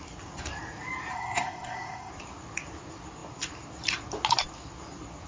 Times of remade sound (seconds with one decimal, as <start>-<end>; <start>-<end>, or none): 1.1-2.1